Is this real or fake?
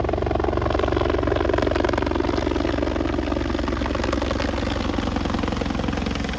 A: real